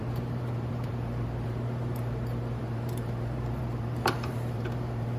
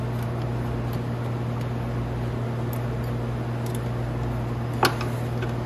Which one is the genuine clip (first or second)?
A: second